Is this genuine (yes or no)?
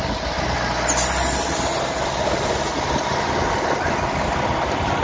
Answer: yes